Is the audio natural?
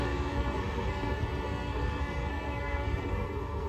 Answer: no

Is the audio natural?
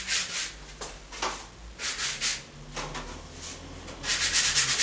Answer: yes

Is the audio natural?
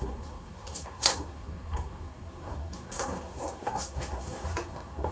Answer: no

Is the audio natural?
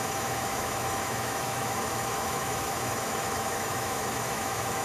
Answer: no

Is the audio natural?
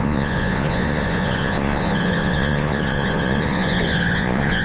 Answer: no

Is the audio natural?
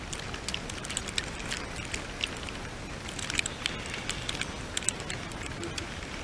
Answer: yes